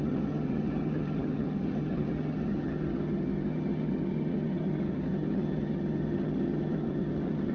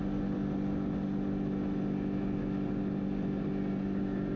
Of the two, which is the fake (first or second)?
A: first